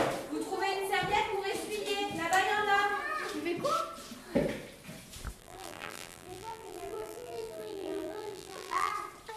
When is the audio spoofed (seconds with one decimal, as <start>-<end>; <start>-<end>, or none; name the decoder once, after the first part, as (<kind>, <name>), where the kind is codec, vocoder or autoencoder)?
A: 5.4-8.9 (vocoder, BigVGAN v2)